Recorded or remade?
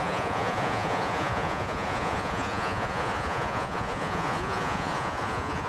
remade